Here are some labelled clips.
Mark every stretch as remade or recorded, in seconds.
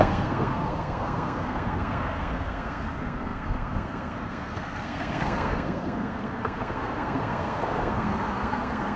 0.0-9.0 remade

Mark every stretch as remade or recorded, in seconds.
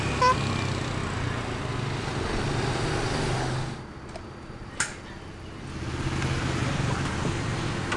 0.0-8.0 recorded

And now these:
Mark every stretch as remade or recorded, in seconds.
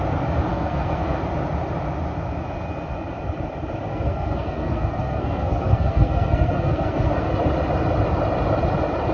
0.0-0.5 recorded; 0.5-1.2 remade; 1.2-3.9 recorded; 3.9-7.3 remade; 7.3-9.1 recorded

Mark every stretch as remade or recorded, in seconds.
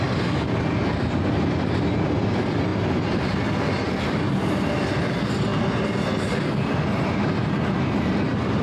0.0-8.6 recorded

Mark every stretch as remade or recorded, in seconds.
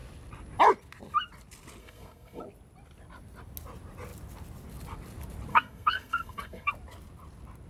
0.0-1.8 recorded; 1.8-2.4 remade; 2.4-5.5 recorded; 5.5-6.7 remade; 6.7-7.7 recorded